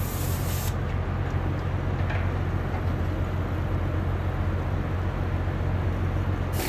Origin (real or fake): real